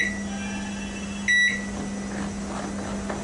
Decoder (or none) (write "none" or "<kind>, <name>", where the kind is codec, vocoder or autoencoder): none